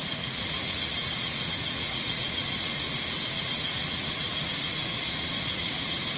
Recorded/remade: remade